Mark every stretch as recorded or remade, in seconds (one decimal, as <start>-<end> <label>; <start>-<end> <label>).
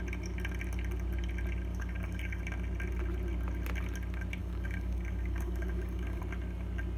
0.0-1.7 recorded; 1.7-2.4 remade; 2.4-4.4 recorded; 4.4-6.2 remade; 6.2-7.0 recorded